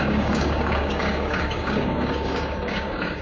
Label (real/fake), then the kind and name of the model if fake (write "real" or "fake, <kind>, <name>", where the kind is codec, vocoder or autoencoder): fake, codec, DAC